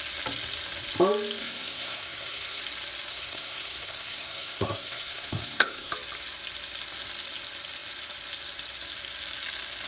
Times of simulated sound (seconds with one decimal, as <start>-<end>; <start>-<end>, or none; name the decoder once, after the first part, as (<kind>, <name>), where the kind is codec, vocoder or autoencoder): 1.4-2.6 (codec, SNAC); 3.1-5.9